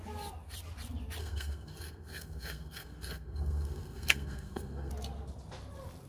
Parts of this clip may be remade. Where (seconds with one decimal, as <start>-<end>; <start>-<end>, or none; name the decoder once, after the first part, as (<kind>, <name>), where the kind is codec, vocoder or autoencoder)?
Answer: 1.2-4.9 (codec, SNAC)

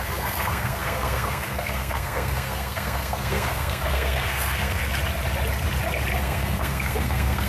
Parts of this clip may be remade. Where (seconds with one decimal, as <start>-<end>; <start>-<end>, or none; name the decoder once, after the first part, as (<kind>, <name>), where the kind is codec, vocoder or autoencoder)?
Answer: 0.0-4.8 (codec, SNAC); 6.1-7.5

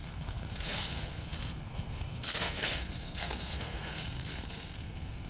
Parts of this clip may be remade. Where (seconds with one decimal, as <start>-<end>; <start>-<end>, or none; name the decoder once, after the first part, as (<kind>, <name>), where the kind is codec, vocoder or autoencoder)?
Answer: 0.0-5.3 (codec, SNAC)

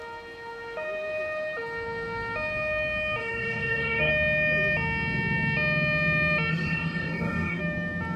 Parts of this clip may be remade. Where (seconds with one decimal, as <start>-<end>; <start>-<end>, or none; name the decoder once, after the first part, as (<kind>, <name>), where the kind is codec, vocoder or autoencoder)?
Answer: 3.2-4.1 (codec, DAC); 6.5-7.6